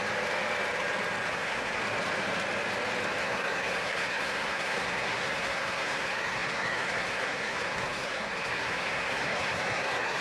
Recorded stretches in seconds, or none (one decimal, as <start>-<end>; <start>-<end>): 0.0-1.3; 1.8-3.2